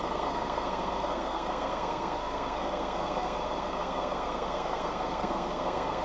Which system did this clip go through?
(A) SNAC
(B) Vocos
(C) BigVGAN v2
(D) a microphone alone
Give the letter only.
A